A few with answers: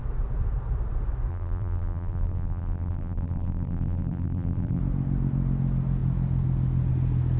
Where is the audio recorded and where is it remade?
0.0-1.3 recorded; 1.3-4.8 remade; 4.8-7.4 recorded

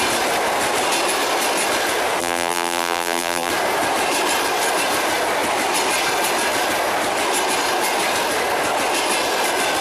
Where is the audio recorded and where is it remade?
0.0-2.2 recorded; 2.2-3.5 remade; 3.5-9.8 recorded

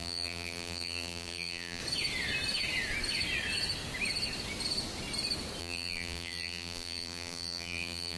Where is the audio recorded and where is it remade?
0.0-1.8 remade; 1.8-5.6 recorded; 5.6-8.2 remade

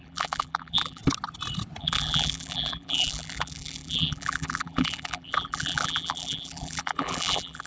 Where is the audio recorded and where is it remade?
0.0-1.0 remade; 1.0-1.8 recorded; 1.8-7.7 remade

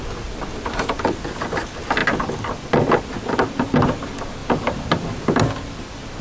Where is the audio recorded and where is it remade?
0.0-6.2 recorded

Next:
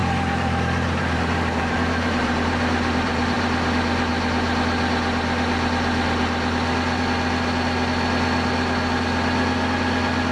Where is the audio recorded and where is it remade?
0.0-3.6 remade; 3.6-10.3 recorded

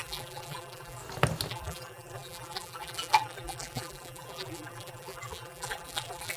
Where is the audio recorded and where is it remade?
0.0-1.0 remade; 1.0-1.5 recorded; 1.5-6.4 remade

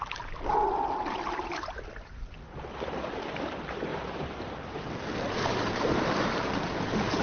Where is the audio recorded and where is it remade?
0.0-3.9 recorded; 3.9-6.6 remade; 6.6-7.2 recorded